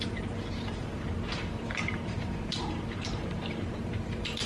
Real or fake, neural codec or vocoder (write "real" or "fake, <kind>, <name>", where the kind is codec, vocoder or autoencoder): fake, vocoder, BigVGAN v2